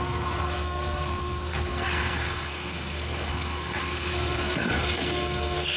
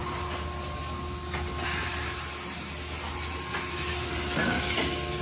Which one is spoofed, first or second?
first